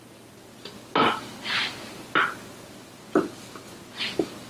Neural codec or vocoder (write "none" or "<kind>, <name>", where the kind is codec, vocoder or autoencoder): none